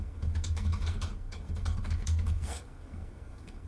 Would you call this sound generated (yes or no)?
yes